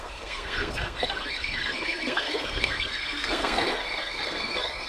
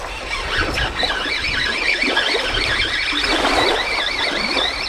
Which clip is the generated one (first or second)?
first